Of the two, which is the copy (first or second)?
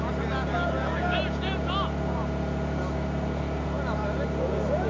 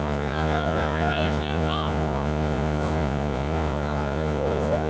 second